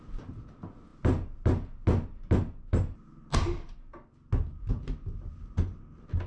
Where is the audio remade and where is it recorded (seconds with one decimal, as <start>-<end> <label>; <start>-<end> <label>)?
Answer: 0.0-6.3 recorded